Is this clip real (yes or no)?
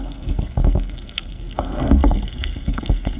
no